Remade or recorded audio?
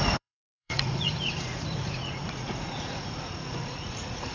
remade